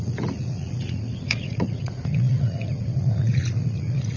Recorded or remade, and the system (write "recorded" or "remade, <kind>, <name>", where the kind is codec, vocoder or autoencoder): remade, vocoder, Vocos